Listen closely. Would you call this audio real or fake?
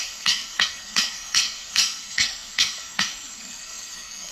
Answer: fake